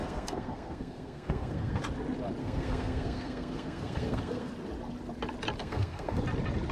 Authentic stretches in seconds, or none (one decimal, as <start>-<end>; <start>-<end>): 1.8-2.4; 4.5-5.6; 6.2-6.7